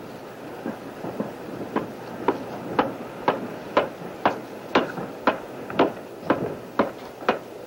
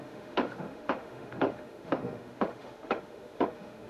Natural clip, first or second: first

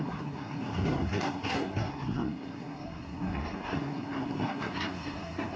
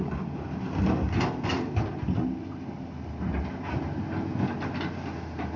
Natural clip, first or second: second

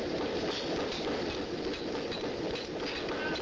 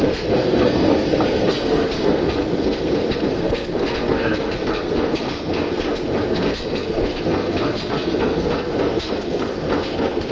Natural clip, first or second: first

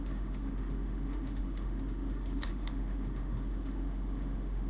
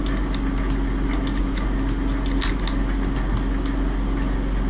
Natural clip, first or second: second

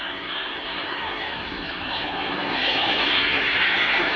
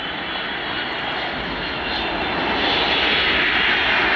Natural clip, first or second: second